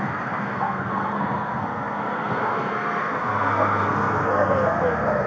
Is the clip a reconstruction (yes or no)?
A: yes